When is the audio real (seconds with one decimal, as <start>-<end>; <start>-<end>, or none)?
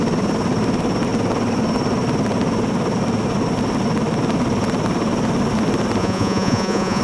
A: 0.0-6.0